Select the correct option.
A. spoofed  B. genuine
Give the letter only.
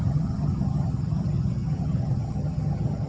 A